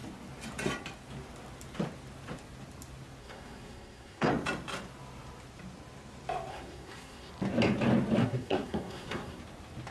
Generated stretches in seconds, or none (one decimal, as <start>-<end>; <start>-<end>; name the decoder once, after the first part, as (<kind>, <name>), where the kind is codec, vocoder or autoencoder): 3.2-4.3 (codec, SNAC); 6.5-7.3; 8.2-9.4